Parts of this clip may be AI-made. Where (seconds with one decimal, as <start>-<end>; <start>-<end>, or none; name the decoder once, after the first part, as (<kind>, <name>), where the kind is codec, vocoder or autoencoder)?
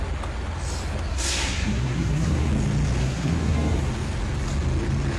1.1-2.5 (codec, SNAC); 3.0-3.9